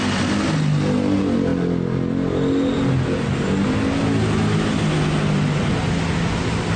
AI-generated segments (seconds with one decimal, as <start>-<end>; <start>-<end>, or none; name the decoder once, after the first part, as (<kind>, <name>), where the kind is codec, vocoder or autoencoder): none